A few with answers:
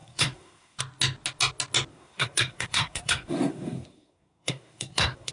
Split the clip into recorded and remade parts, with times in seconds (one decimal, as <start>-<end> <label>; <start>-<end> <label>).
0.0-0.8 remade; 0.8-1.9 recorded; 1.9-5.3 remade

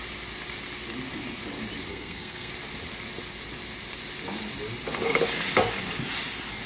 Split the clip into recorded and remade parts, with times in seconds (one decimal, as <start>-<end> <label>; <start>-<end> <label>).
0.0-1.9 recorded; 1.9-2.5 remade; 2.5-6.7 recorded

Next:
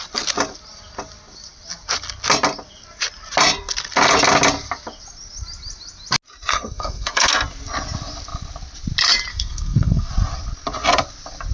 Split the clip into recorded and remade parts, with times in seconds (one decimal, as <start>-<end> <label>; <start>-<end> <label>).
0.0-6.5 recorded; 6.5-7.3 remade; 7.3-9.3 recorded; 9.3-10.1 remade; 10.1-11.5 recorded